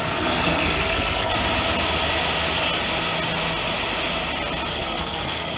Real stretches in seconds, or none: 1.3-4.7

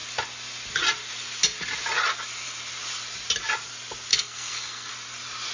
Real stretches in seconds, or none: 0.0-4.1; 4.9-5.5

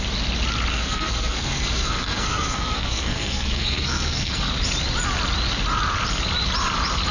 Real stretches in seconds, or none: 0.0-0.7; 4.5-7.1

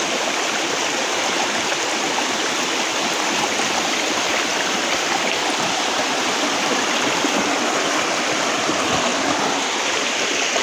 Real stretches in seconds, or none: 0.0-10.6

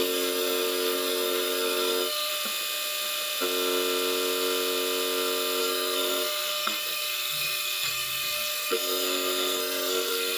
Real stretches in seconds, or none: 2.3-5.6

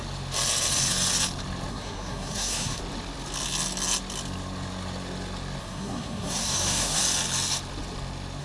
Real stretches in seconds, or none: 0.0-1.7; 2.8-5.6; 7.0-8.4